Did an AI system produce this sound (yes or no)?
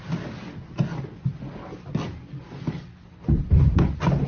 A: no